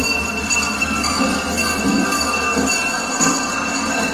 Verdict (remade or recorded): remade